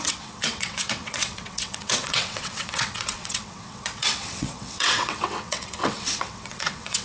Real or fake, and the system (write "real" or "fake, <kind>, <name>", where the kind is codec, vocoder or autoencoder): fake, vocoder, WaveNeXt